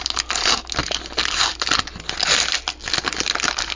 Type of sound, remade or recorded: recorded